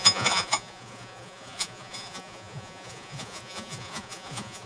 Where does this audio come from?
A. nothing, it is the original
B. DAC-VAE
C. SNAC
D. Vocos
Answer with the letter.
D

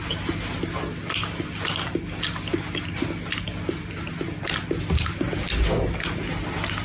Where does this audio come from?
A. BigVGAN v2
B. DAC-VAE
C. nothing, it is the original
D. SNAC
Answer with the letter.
C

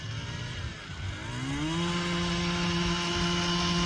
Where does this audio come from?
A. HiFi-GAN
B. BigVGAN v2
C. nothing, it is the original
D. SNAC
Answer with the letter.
C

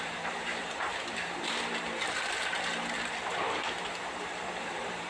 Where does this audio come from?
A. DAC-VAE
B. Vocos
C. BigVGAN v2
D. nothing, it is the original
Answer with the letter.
C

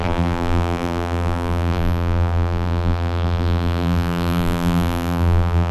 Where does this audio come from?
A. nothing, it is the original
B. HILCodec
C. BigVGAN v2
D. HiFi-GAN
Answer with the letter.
C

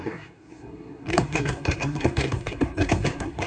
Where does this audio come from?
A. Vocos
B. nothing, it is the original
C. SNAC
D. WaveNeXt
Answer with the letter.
C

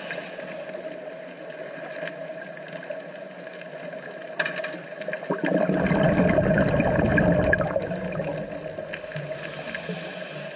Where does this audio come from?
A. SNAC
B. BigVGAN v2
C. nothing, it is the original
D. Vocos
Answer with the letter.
C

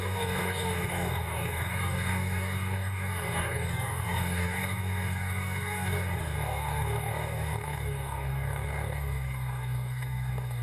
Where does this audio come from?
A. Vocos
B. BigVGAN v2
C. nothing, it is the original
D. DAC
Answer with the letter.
D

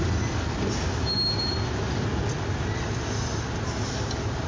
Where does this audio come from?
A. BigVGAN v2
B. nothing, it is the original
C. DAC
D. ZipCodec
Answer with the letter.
B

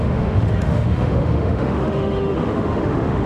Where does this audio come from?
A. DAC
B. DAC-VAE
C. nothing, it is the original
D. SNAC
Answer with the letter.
B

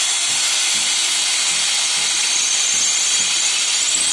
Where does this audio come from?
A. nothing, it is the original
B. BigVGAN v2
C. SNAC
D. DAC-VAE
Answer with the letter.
A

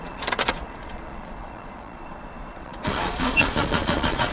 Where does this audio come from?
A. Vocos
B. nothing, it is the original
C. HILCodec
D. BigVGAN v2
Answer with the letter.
A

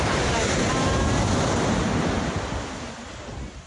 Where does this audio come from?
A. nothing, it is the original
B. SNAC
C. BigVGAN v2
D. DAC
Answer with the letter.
A